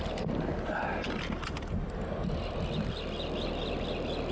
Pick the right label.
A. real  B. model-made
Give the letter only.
A